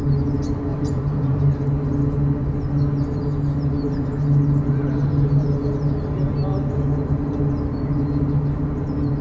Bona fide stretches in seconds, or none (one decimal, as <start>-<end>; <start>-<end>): 0.0-0.7; 1.4-9.2